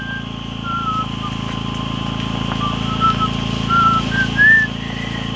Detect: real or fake real